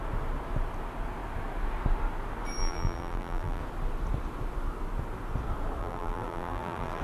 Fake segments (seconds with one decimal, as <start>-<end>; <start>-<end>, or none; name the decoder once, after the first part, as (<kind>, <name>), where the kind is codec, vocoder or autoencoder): 2.6-3.6 (vocoder, BigVGAN v2); 5.8-7.0